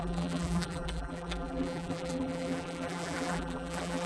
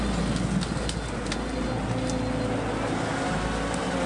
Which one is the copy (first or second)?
first